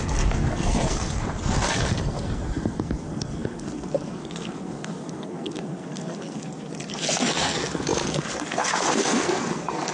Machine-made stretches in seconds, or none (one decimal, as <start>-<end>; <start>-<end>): 0.0-9.9